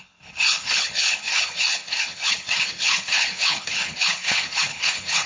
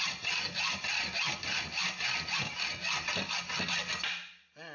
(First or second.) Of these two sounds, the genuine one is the second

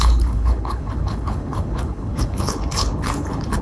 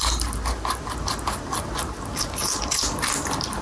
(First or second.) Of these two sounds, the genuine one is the second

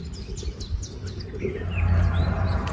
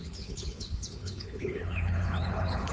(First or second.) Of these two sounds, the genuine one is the first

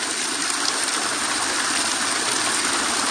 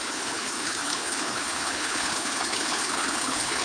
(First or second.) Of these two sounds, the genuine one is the first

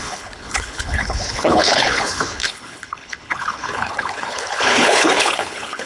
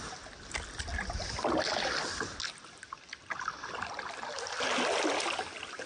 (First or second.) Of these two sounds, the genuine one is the second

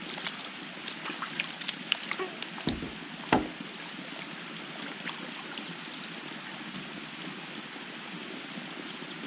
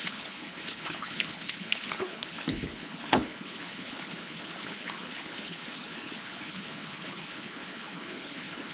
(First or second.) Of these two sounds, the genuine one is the first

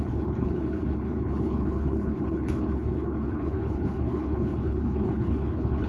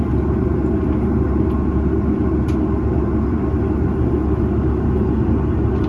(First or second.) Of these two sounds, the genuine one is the second